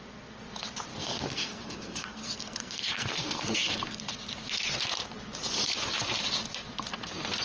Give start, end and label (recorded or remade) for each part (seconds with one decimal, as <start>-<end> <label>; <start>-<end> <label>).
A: 0.0-0.9 recorded; 0.9-4.1 remade; 4.1-7.4 recorded